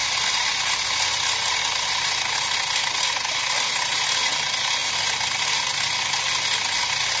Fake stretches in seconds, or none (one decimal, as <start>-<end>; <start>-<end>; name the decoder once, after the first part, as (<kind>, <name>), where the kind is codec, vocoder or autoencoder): none